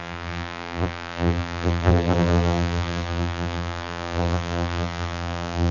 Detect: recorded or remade remade